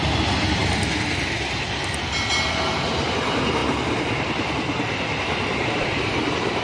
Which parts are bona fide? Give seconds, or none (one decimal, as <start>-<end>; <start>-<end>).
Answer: 0.0-6.6

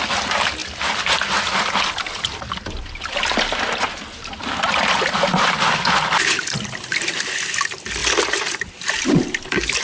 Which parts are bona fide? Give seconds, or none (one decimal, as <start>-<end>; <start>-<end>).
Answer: 0.0-9.8

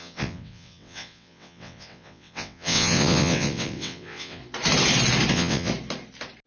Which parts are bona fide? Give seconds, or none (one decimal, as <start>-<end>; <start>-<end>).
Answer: 4.4-5.3; 5.7-6.5

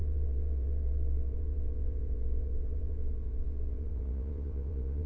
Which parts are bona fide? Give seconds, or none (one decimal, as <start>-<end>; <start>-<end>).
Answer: none

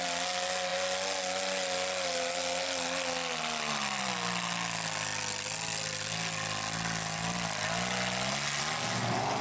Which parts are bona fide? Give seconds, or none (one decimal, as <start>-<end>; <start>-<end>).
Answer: 0.0-9.4